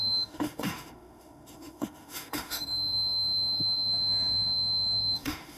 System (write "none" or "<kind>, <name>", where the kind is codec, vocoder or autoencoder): autoencoder, DAC-VAE